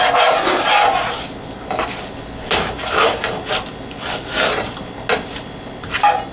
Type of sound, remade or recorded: recorded